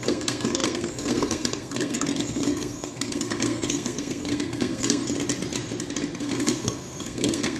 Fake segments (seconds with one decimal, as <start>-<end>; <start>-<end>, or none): 0.0-5.0; 6.2-7.6